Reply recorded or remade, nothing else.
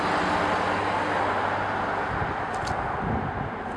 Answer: recorded